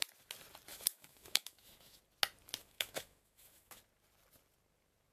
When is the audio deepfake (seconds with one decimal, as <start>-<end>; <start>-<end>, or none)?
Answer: 0.7-2.0; 2.6-3.8